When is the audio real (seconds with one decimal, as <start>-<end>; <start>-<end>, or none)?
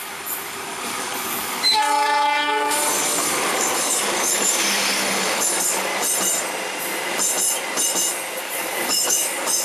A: 5.9-8.4